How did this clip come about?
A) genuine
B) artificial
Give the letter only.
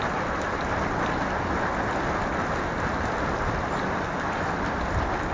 A